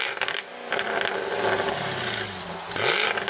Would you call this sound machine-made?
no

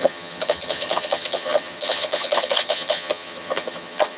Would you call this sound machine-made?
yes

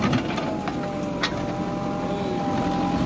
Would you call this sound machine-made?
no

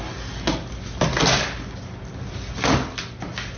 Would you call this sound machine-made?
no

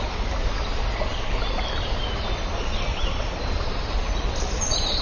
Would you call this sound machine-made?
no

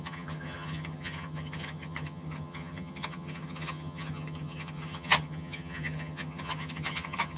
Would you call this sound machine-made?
yes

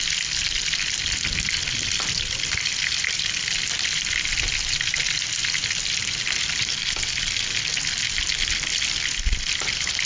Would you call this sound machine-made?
no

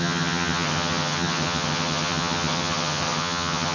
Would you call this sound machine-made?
yes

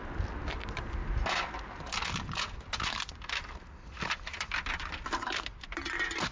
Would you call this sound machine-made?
no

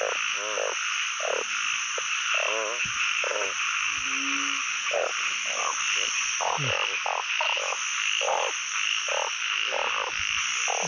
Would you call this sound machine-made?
no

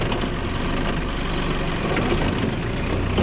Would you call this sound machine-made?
no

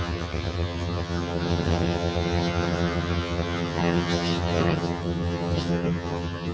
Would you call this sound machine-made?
yes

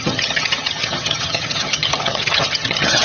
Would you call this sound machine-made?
yes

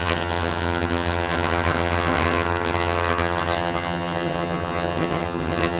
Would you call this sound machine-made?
yes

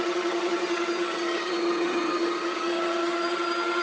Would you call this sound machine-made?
yes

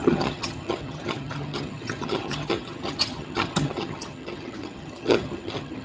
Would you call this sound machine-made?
yes